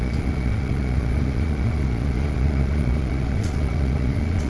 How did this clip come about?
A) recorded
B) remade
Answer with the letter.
B